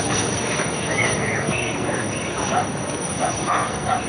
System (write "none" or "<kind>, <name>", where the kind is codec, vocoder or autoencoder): codec, SNAC